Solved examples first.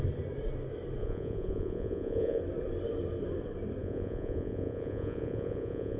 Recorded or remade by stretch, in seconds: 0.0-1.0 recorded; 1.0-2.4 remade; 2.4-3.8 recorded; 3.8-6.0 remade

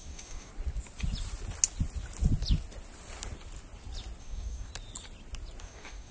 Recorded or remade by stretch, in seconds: 0.0-0.5 remade; 0.5-4.2 recorded; 4.2-4.7 remade; 4.7-5.6 recorded; 5.6-6.1 remade

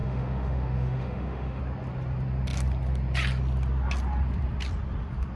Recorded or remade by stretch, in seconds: 0.0-1.6 remade; 1.6-5.4 recorded

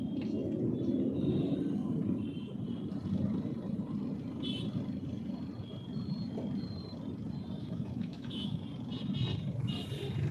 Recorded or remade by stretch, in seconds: 0.0-7.6 recorded; 7.6-8.6 remade; 8.6-10.3 recorded

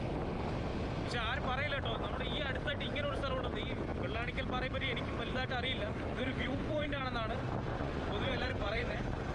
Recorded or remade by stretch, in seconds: 0.0-6.1 recorded; 6.1-7.0 remade; 7.0-7.7 recorded; 7.7-9.3 remade

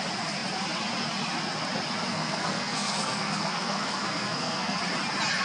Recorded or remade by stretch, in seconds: 0.0-2.1 recorded; 2.1-4.8 remade; 4.8-5.4 recorded

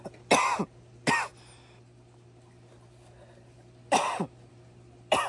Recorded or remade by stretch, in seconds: 0.0-5.3 recorded